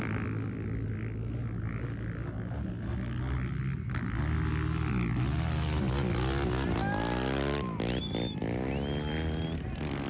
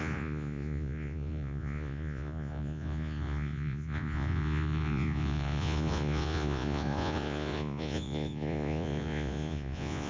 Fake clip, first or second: second